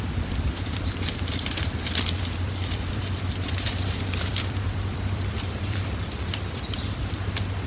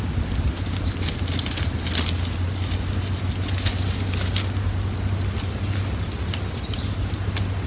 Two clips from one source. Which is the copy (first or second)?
first